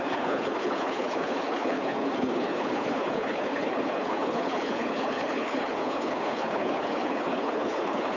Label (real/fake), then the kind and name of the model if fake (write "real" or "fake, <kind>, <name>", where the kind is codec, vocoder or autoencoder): fake, codec, HILCodec